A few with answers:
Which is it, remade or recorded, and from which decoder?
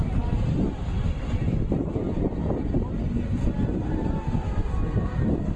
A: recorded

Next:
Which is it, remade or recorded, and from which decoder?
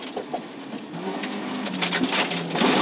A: recorded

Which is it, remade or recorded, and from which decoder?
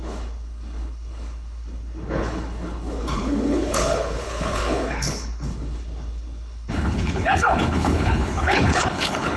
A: remade, codec, HILCodec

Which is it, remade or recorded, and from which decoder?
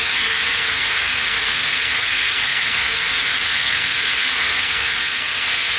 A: remade, codec, SNAC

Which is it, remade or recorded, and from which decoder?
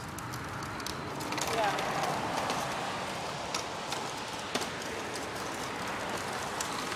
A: recorded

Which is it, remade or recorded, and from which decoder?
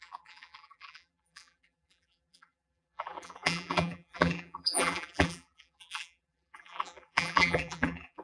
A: remade, vocoder, BigVGAN v2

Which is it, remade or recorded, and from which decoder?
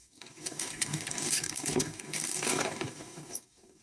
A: remade, codec, DAC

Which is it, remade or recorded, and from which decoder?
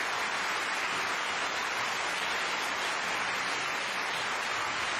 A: recorded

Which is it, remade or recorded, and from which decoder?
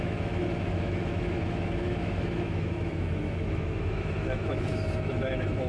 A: remade, autoencoder, DAC-VAE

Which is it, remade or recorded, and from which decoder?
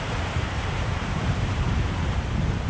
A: remade, vocoder, BigVGAN v2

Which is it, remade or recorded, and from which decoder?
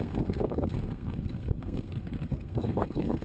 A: remade, codec, SNAC